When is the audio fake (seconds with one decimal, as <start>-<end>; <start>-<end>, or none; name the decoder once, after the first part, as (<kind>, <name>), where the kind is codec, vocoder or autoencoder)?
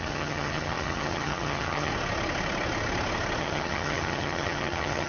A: 0.0-1.9 (vocoder, HiFi-GAN); 3.4-5.1